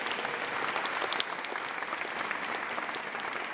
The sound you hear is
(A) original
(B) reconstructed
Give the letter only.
A